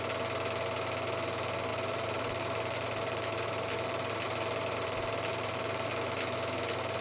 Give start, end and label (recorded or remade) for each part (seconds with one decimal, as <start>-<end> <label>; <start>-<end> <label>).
0.0-1.7 recorded; 1.7-5.9 remade; 5.9-7.0 recorded